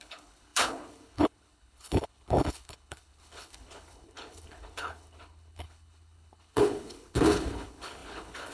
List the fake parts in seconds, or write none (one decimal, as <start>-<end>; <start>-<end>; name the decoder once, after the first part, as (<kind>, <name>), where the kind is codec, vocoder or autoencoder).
0.0-8.5 (codec, HILCodec)